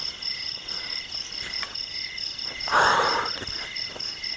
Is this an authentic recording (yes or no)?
yes